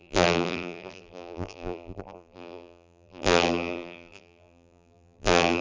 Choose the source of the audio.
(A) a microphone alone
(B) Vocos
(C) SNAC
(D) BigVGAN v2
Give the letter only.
D